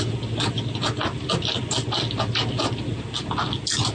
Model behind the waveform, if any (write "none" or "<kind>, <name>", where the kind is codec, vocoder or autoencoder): none